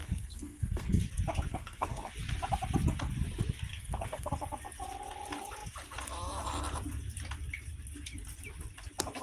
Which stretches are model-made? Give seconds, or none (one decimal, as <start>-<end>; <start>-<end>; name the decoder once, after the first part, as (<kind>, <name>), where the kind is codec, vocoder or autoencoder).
0.0-1.0 (codec, SNAC); 1.5-2.1; 3.7-4.3